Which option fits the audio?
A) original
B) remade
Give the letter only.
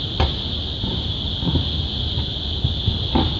A